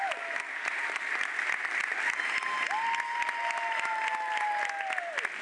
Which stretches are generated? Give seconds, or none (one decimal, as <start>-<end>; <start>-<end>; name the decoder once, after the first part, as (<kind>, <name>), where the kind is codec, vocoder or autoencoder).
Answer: none